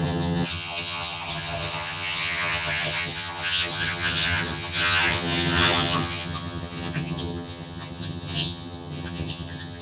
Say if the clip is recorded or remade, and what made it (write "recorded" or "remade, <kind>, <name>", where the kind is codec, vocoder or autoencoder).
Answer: remade, vocoder, HiFi-GAN